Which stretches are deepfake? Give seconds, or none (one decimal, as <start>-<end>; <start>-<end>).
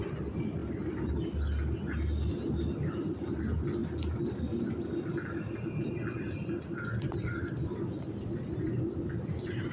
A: none